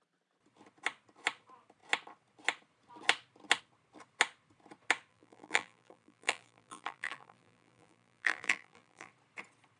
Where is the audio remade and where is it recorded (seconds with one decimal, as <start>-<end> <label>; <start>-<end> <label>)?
0.0-5.1 recorded; 5.1-9.1 remade; 9.1-9.8 recorded